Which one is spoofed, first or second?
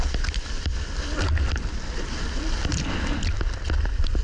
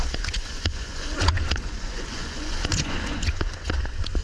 second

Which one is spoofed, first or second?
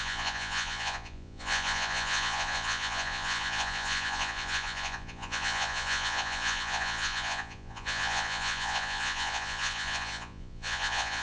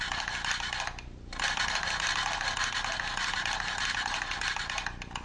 first